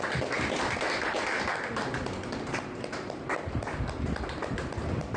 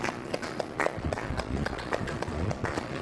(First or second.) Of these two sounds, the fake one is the second